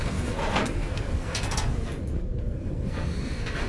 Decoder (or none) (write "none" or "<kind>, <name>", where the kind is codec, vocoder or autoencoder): codec, SNAC